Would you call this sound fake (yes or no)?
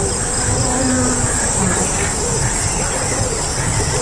no